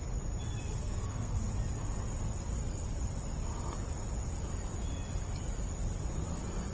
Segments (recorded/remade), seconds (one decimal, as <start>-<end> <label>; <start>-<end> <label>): 0.0-0.8 recorded; 0.8-1.4 remade; 1.4-6.7 recorded